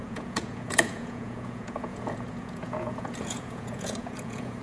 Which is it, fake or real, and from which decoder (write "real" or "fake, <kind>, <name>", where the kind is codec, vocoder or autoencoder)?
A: fake, vocoder, Vocos